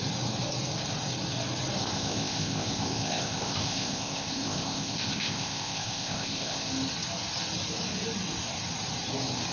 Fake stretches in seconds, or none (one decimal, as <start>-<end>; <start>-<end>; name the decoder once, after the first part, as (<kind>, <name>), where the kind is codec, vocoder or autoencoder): 1.8-6.7 (codec, ZipCodec)